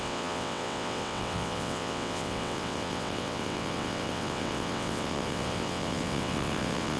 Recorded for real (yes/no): no